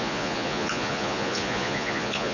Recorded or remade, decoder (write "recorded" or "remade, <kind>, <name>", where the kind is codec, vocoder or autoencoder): remade, vocoder, Vocos